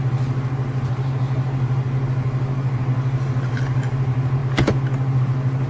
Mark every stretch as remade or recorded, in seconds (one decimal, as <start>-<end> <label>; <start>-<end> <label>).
0.0-5.7 recorded